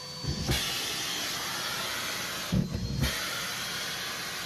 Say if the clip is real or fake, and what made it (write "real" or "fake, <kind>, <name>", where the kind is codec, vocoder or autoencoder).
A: real